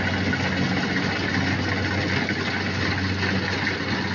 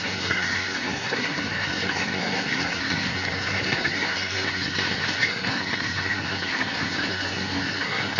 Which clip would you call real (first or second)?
first